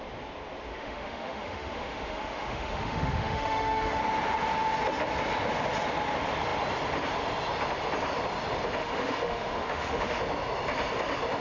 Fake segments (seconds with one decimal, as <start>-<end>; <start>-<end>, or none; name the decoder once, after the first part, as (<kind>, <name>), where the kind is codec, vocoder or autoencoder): 0.7-4.0 (autoencoder, DAC-VAE); 8.8-10.2